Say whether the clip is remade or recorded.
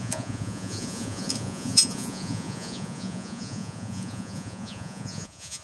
remade